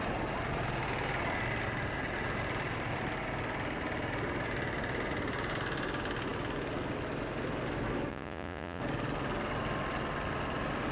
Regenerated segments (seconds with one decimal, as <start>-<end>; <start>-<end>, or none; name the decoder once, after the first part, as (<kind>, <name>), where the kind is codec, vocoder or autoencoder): 8.1-8.8 (vocoder, Vocos)